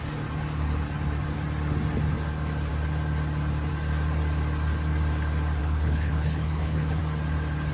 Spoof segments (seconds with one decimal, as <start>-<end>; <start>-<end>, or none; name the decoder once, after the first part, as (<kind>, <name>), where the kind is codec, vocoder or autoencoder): 5.6-7.0 (codec, HILCodec)